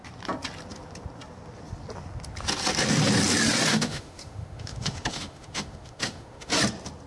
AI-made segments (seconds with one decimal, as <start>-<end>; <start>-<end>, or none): 3.7-6.5